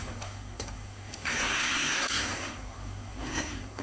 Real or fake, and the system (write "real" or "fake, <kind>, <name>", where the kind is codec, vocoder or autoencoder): fake, codec, SNAC